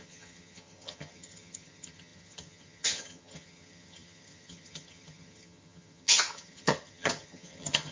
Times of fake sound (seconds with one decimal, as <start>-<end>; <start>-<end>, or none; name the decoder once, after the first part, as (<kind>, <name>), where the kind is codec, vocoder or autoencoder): 0.0-7.9 (vocoder, HiFi-GAN)